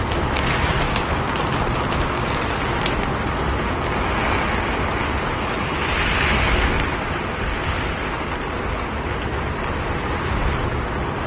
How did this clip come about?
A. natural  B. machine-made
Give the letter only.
A